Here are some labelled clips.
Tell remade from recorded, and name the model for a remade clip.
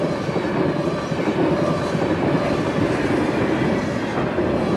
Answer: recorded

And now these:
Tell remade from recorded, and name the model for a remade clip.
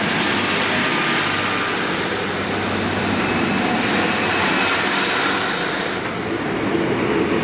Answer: recorded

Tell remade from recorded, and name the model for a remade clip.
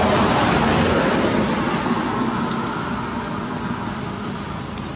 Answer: recorded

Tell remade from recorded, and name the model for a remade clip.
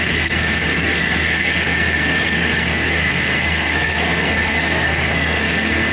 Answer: remade, codec, SNAC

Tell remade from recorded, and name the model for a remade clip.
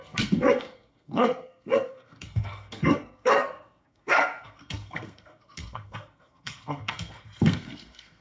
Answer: remade, codec, SNAC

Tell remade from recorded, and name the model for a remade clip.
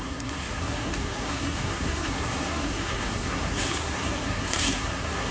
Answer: remade, codec, SNAC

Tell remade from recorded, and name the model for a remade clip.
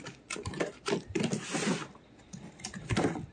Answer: recorded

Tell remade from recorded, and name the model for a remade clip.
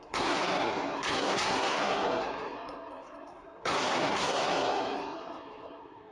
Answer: remade, codec, SNAC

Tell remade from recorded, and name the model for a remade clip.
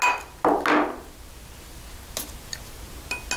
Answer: recorded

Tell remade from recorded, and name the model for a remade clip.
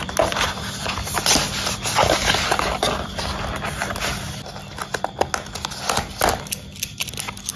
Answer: recorded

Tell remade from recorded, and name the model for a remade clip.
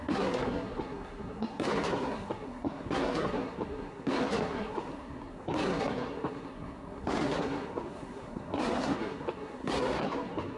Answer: remade, codec, SNAC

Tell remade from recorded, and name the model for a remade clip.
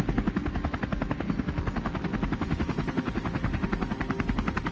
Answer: recorded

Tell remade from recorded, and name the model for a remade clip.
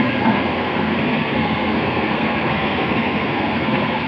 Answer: remade, codec, SNAC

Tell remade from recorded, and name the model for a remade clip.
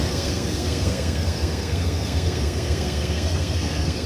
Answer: remade, codec, SNAC